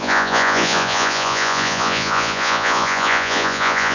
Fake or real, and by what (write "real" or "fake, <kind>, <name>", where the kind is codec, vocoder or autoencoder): fake, vocoder, Vocos